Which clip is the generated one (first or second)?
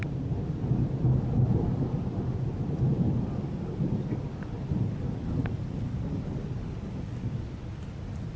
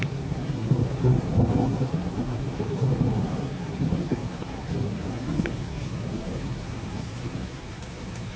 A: second